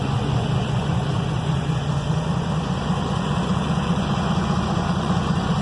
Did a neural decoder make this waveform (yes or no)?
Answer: yes